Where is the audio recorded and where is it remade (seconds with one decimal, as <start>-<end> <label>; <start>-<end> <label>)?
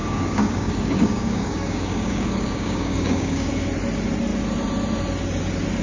0.0-3.5 remade; 3.5-5.8 recorded